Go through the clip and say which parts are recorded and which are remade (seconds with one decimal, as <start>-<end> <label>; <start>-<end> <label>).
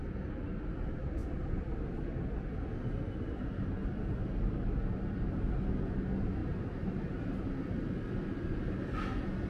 0.0-6.4 recorded; 6.4-7.2 remade; 7.2-9.5 recorded